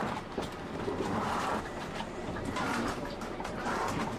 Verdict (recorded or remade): remade